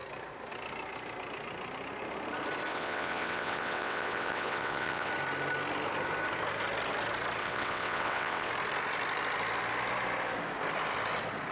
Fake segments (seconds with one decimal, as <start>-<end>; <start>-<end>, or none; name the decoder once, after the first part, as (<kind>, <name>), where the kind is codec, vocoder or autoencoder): 2.7-5.1 (vocoder, WaveNeXt); 7.4-8.5